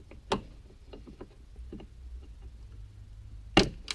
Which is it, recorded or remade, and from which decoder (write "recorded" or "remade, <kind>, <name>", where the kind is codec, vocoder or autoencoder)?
recorded